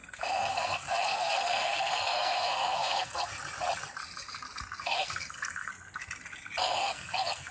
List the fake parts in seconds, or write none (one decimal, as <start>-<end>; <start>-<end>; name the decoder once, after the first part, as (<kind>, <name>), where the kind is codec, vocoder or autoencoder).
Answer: 0.0-3.3 (codec, SNAC); 4.8-5.7; 6.6-7.5